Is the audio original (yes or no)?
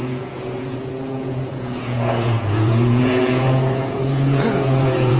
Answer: no